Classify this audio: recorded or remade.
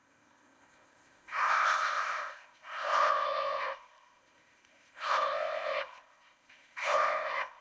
remade